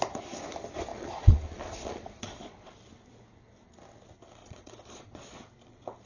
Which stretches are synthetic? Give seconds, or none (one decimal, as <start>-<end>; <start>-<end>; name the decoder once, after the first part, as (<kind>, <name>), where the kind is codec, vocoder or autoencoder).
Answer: 0.9-2.7 (vocoder, Vocos); 4.4-5.4